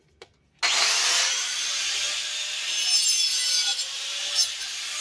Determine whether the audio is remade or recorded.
recorded